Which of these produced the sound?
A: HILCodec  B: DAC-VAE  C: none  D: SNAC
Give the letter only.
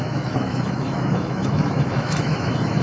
B